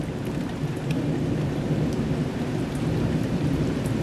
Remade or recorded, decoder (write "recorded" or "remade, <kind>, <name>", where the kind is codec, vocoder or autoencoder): remade, vocoder, BigVGAN v2